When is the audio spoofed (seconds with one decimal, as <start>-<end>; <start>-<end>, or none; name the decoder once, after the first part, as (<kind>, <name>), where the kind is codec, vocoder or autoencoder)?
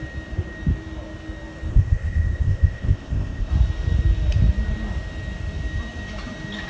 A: 1.7-3.5 (codec, ZipCodec)